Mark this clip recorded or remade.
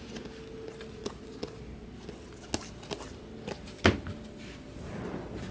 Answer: recorded